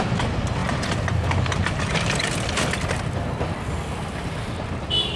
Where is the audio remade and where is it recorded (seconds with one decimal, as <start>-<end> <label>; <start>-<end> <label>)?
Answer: 0.0-5.2 recorded